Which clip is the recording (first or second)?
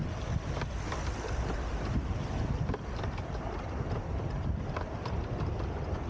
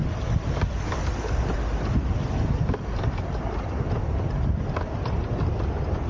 second